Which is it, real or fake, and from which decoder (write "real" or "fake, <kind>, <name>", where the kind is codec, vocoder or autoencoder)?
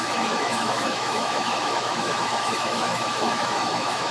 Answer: fake, autoencoder, DAC-VAE